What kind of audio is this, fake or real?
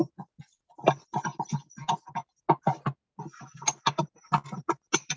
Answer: real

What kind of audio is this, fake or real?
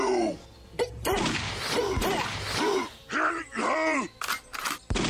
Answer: real